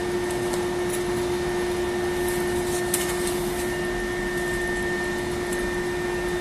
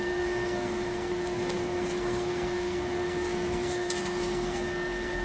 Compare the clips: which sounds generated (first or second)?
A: second